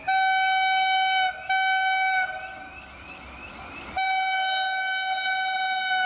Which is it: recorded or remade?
recorded